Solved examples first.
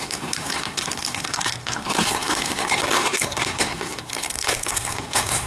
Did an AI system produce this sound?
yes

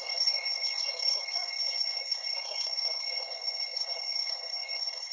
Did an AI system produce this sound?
yes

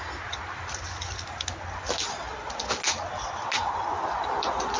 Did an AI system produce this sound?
no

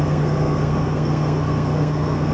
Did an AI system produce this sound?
yes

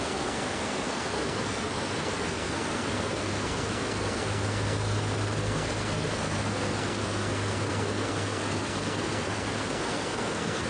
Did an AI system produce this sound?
yes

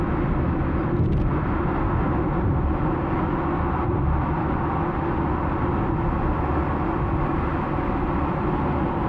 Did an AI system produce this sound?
no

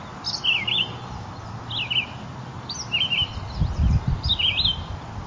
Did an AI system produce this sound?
no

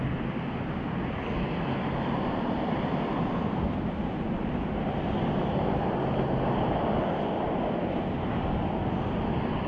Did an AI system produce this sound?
no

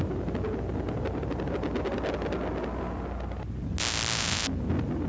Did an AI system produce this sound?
no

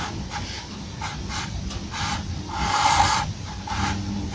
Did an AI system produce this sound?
no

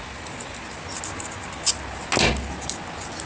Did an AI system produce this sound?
no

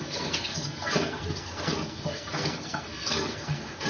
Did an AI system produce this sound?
yes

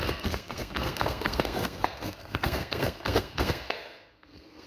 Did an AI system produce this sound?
yes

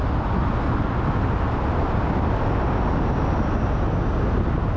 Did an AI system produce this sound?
no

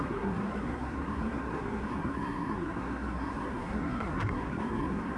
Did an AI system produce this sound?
yes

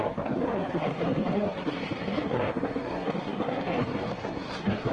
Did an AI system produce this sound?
yes